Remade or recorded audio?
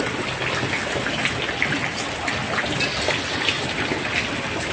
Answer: recorded